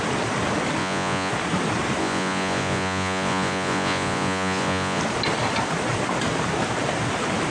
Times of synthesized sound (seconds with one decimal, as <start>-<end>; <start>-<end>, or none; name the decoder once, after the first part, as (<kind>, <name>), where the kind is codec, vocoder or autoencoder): 0.8-1.3 (vocoder, Vocos); 2.0-5.0